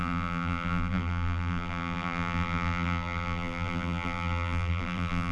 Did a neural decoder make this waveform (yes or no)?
yes